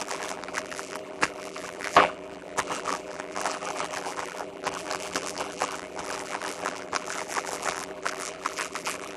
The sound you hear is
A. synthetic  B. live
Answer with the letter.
A